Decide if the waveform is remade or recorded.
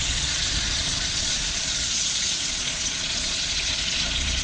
remade